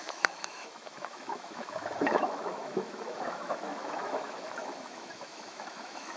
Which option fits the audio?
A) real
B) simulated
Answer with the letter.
B